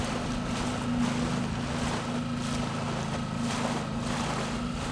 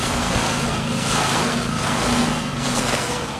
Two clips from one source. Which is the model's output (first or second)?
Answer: second